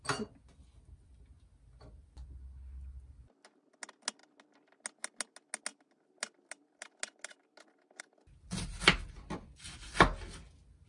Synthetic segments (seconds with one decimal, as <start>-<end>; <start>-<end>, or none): none